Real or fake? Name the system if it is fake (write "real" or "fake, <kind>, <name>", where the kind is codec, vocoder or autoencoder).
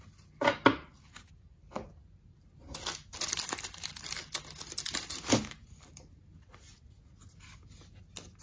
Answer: real